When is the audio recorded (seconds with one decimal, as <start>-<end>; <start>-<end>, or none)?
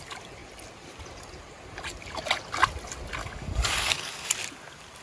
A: 0.0-3.2; 4.3-5.0